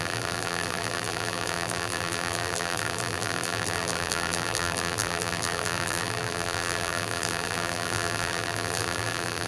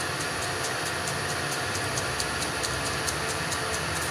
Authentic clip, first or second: second